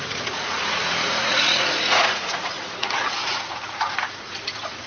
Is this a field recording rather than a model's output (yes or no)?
no